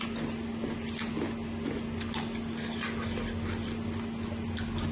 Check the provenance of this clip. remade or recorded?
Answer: recorded